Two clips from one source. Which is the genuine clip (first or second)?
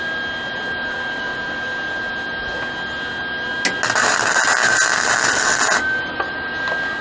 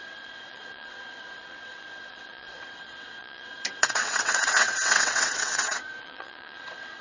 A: first